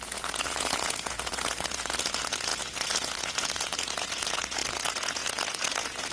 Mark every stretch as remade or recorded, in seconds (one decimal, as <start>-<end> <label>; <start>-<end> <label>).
0.0-6.1 remade